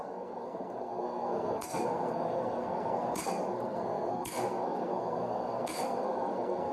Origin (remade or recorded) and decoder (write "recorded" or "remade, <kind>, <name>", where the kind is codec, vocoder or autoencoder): remade, codec, SNAC